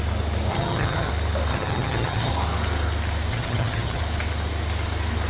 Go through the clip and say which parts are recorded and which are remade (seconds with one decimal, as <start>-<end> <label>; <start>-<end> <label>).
0.0-0.5 recorded; 0.5-1.1 remade; 1.1-1.5 recorded; 1.5-2.3 remade; 2.3-3.3 recorded; 3.3-4.0 remade; 4.0-5.3 recorded